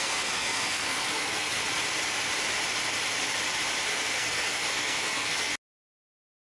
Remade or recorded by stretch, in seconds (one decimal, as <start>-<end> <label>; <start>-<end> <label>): 0.0-1.6 remade; 1.6-3.9 recorded; 3.9-5.5 remade; 5.5-6.4 recorded